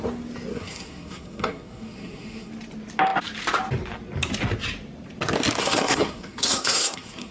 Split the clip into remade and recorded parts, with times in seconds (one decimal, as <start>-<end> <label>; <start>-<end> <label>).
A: 0.0-0.5 recorded; 0.5-2.5 remade; 2.5-5.6 recorded; 5.6-7.3 remade